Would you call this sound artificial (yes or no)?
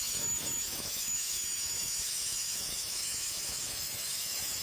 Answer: yes